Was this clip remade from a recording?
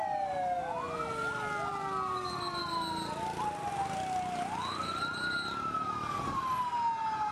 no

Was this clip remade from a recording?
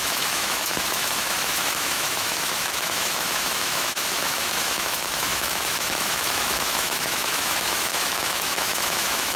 yes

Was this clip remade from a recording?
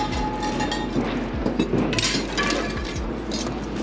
no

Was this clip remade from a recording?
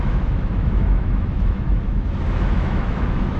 yes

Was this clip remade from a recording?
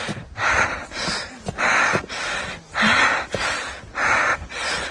no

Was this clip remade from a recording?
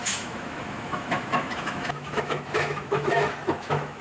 yes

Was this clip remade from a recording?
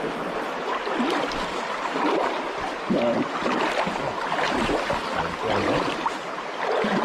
no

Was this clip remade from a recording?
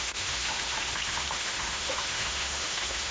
yes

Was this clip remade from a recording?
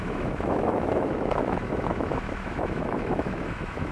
yes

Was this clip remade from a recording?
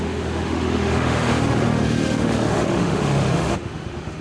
yes